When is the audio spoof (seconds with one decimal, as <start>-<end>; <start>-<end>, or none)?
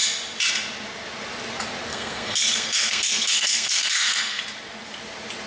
1.9-4.4